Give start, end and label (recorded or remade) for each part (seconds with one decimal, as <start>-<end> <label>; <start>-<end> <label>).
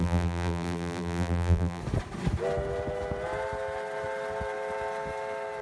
0.0-1.8 remade; 1.8-5.6 recorded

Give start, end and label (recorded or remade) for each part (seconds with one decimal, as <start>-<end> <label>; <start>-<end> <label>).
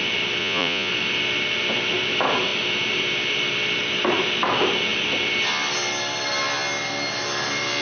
0.0-0.4 recorded; 0.4-0.9 remade; 0.9-7.8 recorded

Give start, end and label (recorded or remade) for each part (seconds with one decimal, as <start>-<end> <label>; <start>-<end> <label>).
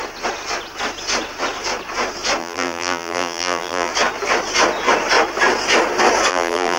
0.0-2.4 recorded; 2.4-3.9 remade; 3.9-6.3 recorded; 6.3-6.8 remade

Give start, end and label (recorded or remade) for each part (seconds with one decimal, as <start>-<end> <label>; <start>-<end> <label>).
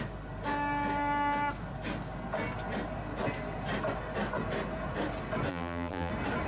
0.0-5.5 recorded; 5.5-6.1 remade; 6.1-6.5 recorded